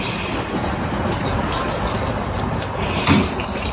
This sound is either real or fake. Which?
fake